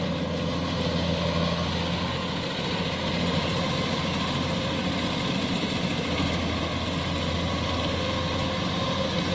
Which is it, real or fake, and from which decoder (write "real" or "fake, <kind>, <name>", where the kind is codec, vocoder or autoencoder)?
real